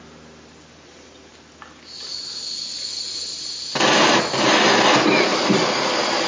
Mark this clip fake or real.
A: real